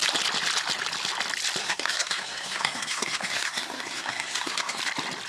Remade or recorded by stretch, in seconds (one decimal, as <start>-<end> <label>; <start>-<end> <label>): 0.0-1.6 recorded; 1.6-4.8 remade; 4.8-5.3 recorded